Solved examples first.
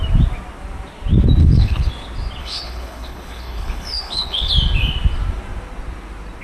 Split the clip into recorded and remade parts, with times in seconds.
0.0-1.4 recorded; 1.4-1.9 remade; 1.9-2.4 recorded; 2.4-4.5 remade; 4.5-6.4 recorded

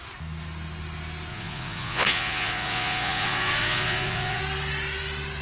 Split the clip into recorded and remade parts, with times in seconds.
0.0-1.3 recorded; 1.3-4.4 remade; 4.4-5.4 recorded

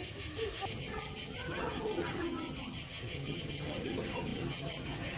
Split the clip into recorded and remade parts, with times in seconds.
0.0-0.8 recorded; 0.8-5.2 remade